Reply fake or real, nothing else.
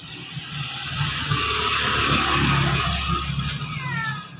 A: real